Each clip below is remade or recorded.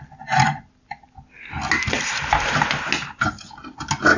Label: recorded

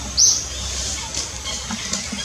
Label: recorded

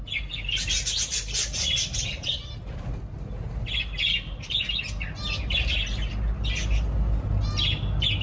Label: recorded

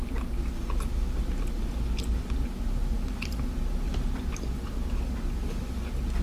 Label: recorded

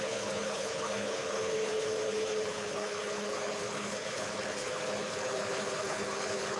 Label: remade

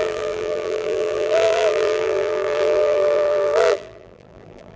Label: remade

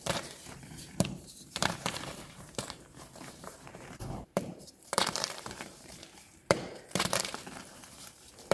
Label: remade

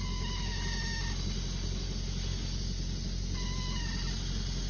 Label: recorded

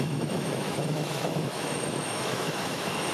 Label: remade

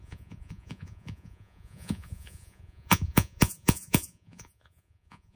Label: remade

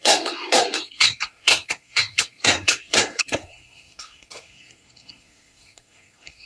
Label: remade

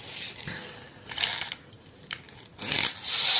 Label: recorded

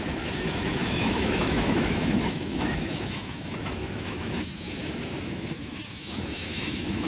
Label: remade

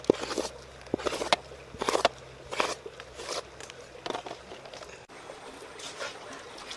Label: recorded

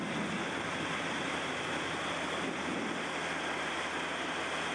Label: recorded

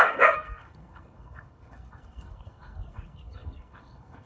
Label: remade